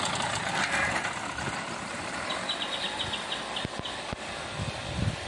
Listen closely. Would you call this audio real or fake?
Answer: real